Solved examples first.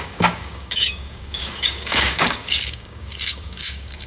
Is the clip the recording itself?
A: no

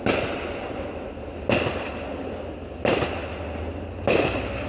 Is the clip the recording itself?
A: yes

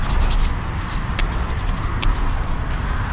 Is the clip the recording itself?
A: yes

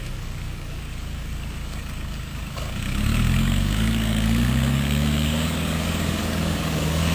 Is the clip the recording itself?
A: no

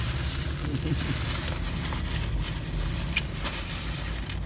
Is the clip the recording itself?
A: yes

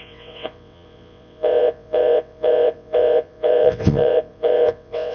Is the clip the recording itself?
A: no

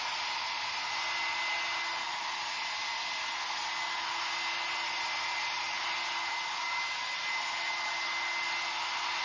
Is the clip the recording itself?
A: yes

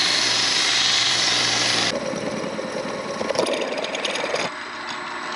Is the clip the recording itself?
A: yes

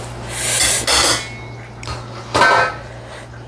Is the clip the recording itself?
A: yes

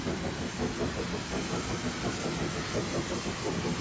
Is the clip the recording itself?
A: yes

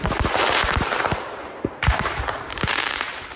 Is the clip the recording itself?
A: no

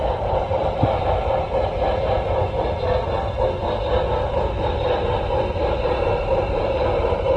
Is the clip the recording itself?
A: no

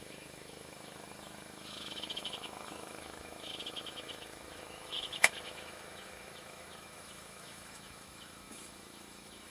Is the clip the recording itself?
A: no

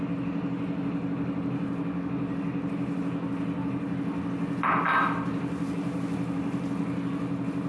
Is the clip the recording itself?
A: yes